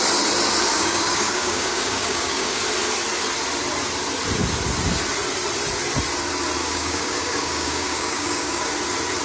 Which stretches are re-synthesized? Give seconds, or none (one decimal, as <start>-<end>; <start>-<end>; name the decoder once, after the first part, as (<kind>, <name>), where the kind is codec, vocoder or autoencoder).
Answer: 0.7-2.6 (codec, DAC); 6.6-8.7